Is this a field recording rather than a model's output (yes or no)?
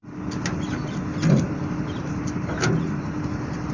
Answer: yes